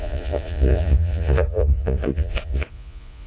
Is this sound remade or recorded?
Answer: remade